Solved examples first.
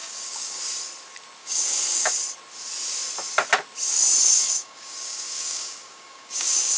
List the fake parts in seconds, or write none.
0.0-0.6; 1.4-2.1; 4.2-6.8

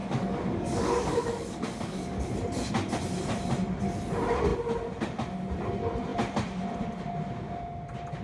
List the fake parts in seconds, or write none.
0.0-2.3

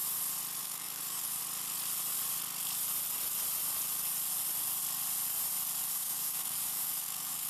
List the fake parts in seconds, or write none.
0.6-1.4; 5.9-7.5

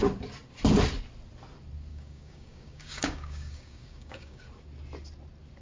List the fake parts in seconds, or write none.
1.9-4.4

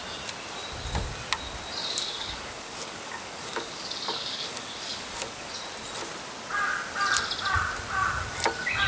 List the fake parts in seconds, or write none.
1.8-5.5

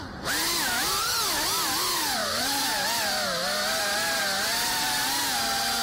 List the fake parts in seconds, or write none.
none

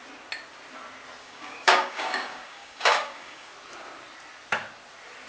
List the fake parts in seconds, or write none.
1.2-3.5

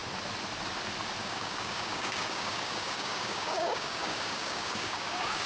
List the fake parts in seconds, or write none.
1.2-5.5